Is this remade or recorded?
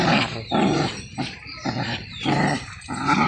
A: remade